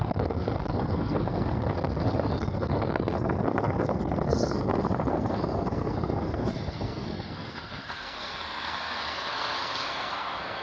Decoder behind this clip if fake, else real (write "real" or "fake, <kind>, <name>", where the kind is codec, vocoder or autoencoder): fake, codec, SNAC